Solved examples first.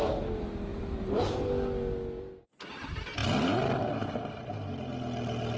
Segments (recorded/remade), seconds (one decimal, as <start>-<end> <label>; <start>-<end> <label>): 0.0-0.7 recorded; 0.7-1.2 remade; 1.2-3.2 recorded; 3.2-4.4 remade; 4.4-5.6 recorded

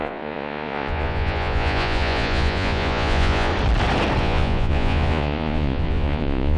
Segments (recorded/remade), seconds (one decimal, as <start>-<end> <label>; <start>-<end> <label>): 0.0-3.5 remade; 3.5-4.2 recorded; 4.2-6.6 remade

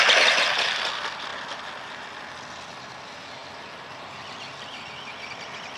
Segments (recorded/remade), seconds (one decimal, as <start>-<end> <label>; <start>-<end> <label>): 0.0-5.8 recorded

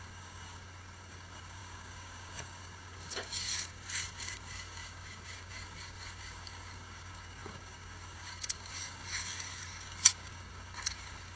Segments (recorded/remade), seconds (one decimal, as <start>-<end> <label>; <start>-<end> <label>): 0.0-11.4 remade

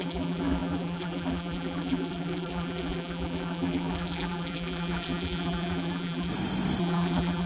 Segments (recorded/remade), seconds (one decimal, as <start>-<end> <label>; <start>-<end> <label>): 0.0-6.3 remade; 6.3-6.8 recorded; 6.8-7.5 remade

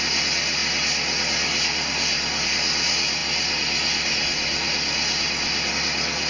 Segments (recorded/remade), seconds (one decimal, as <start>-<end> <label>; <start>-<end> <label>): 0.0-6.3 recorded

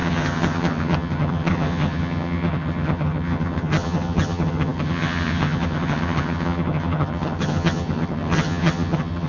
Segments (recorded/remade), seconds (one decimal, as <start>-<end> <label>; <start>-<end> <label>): 0.0-9.3 remade